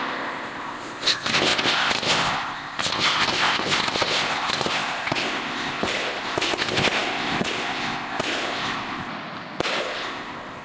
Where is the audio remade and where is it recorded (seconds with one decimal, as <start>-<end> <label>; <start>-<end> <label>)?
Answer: 0.0-9.1 remade; 9.1-9.8 recorded; 9.8-10.6 remade